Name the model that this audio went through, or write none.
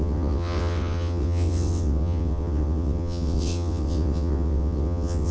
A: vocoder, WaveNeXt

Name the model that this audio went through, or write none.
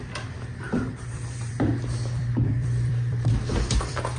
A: vocoder, BigVGAN v2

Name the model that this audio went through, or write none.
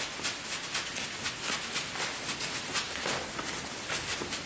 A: none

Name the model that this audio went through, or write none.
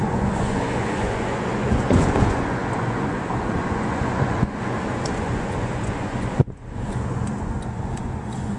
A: vocoder, Vocos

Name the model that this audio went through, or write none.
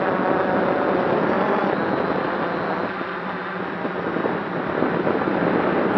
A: none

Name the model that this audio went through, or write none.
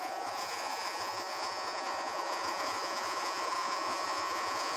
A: vocoder, Vocos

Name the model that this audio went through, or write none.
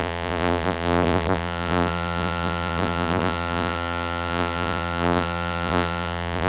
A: vocoder, BigVGAN v2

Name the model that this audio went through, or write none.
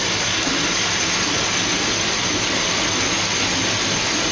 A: none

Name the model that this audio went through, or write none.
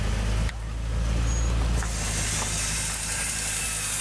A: none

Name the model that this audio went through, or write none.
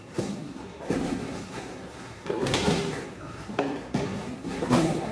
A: codec, SNAC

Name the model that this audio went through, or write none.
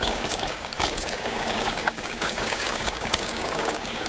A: codec, DAC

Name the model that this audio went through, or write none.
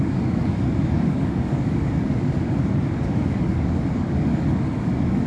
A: codec, DAC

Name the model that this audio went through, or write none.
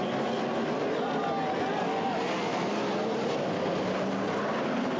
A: none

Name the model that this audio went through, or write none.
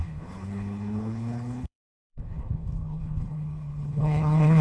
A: codec, HILCodec